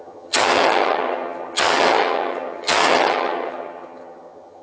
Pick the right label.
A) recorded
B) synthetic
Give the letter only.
B